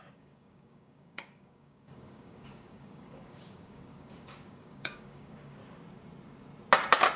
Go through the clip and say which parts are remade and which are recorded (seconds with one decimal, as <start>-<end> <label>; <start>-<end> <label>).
0.0-5.6 remade; 5.6-7.2 recorded